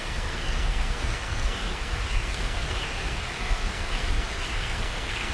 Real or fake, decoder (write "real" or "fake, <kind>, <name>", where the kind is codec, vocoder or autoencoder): fake, codec, SNAC